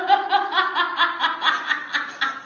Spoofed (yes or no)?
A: no